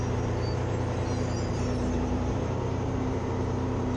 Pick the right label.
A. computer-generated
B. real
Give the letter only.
A